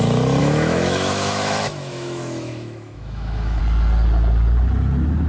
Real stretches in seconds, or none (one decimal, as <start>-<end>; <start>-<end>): 0.0-0.4; 3.6-5.3